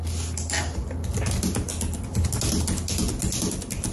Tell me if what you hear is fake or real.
real